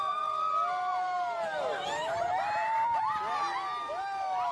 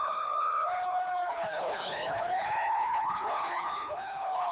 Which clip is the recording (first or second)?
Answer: first